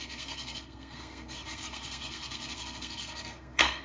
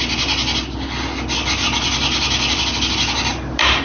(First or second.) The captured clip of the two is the second